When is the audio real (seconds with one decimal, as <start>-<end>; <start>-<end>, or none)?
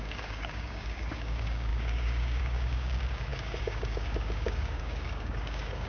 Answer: none